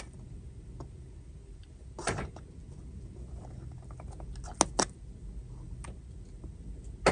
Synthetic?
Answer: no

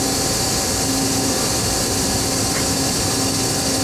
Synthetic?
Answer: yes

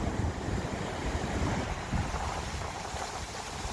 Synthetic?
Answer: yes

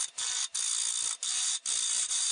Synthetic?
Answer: no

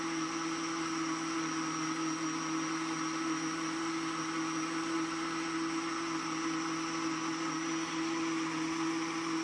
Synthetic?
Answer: no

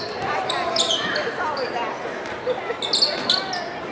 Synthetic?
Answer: no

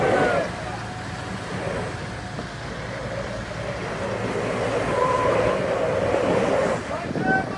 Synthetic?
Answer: no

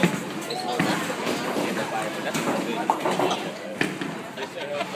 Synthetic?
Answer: no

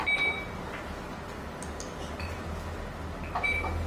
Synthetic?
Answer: no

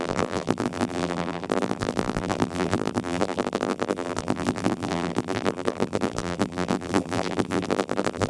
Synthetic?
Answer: yes